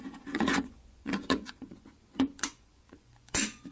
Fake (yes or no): yes